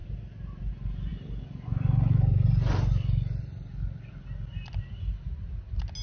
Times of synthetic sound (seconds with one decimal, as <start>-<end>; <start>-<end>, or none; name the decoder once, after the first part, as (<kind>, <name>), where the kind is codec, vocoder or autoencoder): none